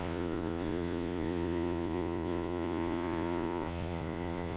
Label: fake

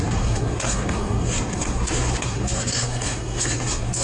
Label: fake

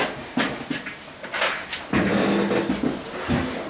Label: real